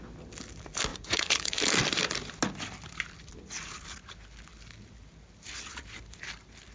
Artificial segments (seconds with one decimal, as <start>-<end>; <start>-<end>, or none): 0.9-1.6